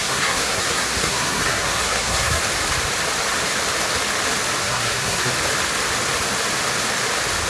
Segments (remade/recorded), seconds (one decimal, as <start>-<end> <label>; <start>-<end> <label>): 0.0-2.4 remade; 2.4-4.6 recorded; 4.6-5.3 remade; 5.3-7.5 recorded